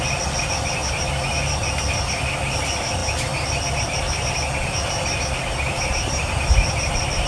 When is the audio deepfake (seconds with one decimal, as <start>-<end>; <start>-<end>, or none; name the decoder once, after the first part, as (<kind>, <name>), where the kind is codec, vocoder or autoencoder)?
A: none